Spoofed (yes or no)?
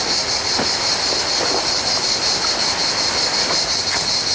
no